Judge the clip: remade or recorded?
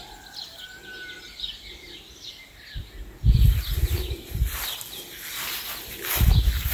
recorded